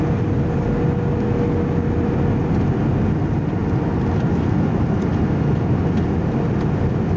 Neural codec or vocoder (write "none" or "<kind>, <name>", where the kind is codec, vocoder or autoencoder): none